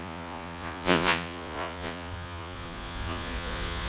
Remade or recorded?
remade